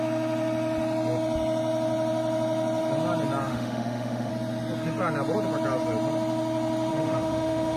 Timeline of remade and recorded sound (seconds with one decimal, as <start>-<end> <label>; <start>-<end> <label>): 0.0-3.5 recorded; 3.5-4.3 remade; 4.3-6.9 recorded; 6.9-7.8 remade